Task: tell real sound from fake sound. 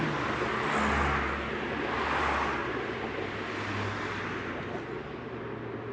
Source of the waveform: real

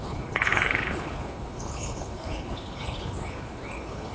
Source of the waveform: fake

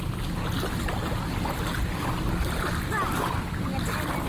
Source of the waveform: real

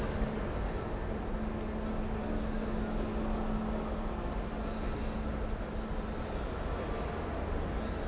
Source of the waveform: real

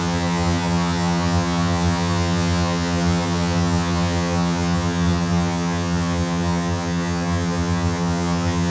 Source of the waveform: fake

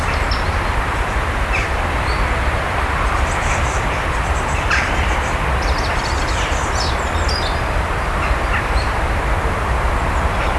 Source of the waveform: fake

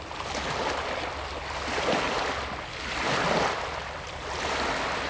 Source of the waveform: real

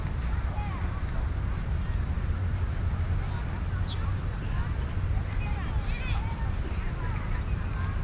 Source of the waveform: real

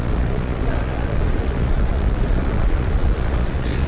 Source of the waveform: fake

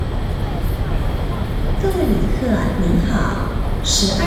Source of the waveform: real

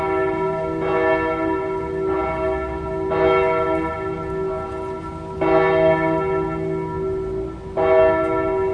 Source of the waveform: real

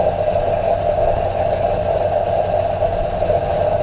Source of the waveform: real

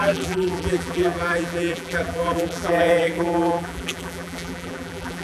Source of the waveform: fake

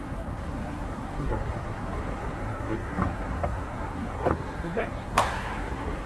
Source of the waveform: fake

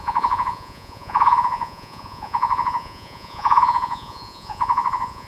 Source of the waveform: fake